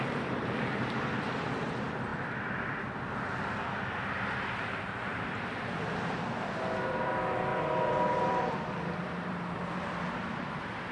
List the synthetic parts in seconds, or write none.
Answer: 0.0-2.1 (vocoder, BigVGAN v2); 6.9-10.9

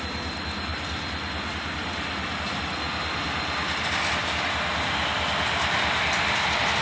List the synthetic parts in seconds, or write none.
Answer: none

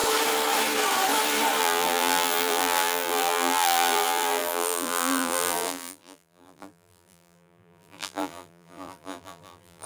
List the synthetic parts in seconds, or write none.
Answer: 1.6-9.9 (vocoder, BigVGAN v2)

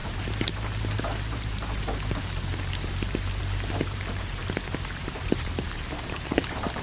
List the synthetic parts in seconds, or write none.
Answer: 0.0-4.4 (vocoder, BigVGAN v2); 5.0-6.8